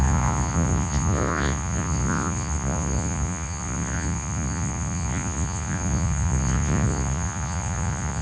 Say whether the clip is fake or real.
fake